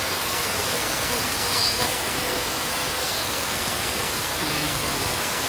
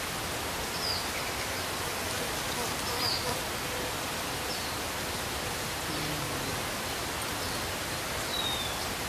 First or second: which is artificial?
first